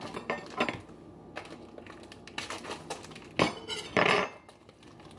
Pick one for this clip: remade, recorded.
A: recorded